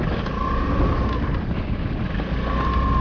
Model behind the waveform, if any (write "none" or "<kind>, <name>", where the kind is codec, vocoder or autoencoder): none